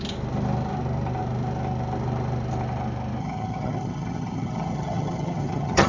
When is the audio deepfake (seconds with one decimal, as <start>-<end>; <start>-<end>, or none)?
3.2-5.9

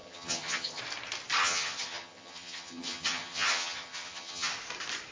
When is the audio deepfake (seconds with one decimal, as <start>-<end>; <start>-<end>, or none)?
0.0-0.8; 1.4-4.5

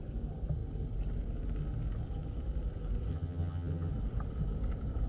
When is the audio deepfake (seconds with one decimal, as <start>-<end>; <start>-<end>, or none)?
3.1-3.9

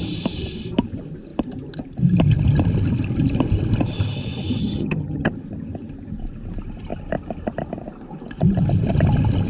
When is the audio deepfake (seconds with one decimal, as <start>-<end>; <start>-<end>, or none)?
4.6-5.3